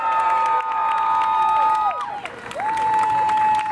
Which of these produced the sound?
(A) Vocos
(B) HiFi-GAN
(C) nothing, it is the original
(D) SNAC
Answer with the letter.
C